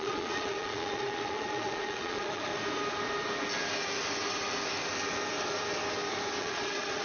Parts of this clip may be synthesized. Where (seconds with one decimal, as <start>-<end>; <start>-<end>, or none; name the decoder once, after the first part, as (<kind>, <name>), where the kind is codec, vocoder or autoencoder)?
0.0-2.5 (vocoder, Vocos); 6.4-7.0